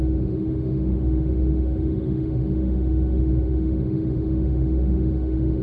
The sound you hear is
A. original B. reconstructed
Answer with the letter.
B